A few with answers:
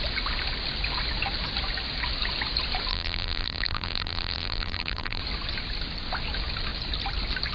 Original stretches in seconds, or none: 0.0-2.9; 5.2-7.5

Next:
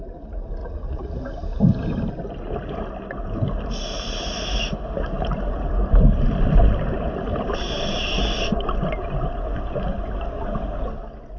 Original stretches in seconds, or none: 0.0-0.6; 1.2-11.4

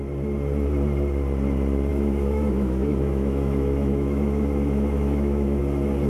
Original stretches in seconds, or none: 0.0-1.9; 5.6-6.1

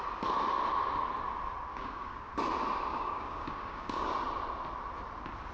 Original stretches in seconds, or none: 0.0-1.7; 2.3-2.9; 4.1-5.5

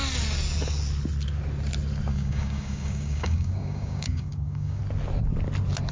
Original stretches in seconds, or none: 0.0-2.1; 4.8-5.9

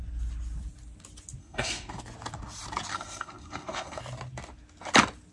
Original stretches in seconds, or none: 0.0-1.4; 2.0-2.9; 4.0-5.3

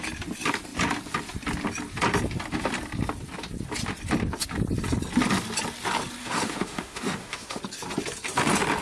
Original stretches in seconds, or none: 0.0-6.2; 7.6-8.8

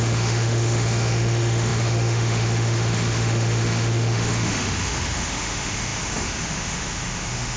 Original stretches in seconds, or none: none